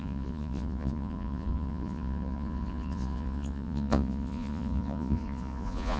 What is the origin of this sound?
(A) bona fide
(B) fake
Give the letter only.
B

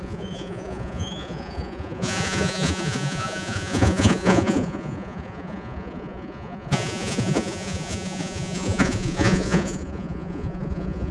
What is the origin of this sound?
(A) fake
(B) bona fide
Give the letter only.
A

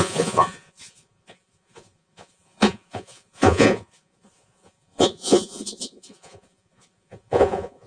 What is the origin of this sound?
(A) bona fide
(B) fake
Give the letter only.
B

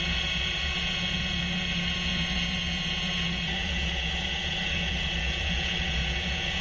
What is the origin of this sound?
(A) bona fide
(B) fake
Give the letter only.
B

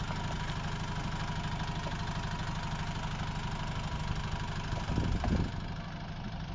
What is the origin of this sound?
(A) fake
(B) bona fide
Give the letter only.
B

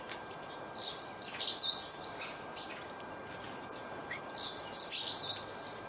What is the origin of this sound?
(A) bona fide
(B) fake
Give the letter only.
A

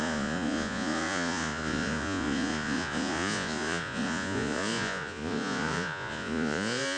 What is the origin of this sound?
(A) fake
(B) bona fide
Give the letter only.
A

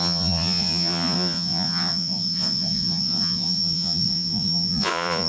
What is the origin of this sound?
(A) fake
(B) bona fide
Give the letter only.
A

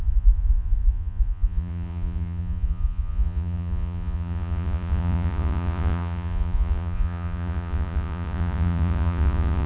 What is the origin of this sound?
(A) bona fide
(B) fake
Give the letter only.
B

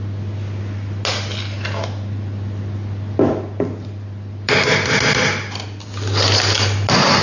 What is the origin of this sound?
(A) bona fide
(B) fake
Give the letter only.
A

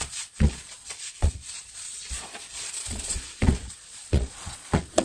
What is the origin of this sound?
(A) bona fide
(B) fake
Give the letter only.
B